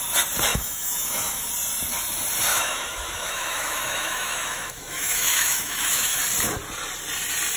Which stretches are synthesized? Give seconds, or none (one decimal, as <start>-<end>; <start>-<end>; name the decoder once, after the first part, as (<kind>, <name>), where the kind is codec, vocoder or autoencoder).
0.5-1.5 (autoencoder, DAC-VAE); 2.5-6.2